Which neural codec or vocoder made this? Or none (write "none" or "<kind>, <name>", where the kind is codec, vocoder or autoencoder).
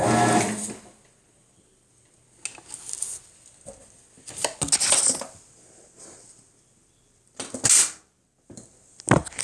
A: none